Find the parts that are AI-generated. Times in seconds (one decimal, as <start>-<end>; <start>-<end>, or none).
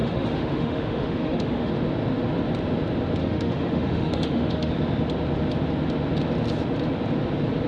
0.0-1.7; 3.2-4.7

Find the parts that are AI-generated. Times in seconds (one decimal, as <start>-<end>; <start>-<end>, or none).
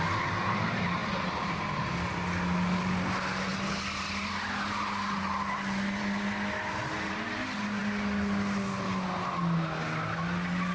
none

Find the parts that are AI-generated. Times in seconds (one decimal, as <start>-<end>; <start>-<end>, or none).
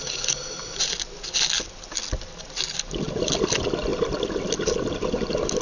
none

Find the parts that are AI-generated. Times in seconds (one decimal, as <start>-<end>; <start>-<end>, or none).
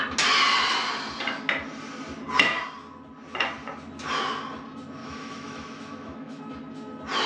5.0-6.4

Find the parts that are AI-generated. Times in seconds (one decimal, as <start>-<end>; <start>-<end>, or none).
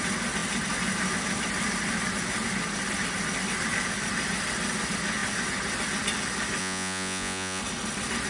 6.6-7.6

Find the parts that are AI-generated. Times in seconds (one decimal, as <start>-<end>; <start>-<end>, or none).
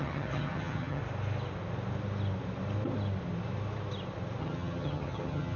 0.0-1.0; 4.4-5.6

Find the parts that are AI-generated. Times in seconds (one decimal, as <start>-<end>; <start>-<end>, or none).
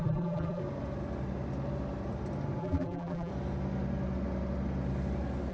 0.0-0.6; 2.6-3.3